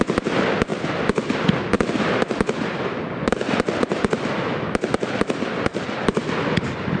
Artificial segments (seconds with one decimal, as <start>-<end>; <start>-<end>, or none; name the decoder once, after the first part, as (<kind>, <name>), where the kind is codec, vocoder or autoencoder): 5.7-6.3 (vocoder, BigVGAN v2)